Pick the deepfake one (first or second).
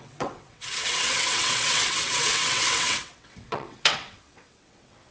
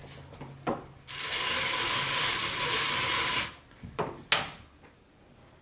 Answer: first